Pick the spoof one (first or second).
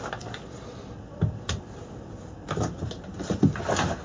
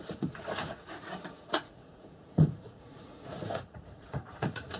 second